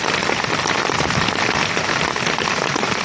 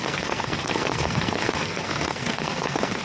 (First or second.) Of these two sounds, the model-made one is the second